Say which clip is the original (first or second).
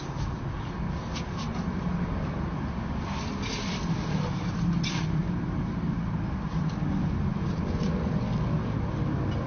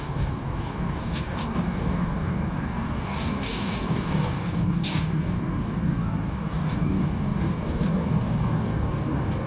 first